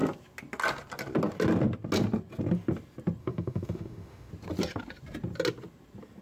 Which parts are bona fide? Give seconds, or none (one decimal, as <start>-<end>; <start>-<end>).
0.0-3.2; 4.3-6.2